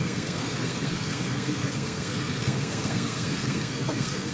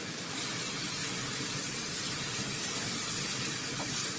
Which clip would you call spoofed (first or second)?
first